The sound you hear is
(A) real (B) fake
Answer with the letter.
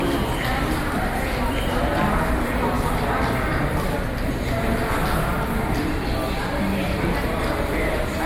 A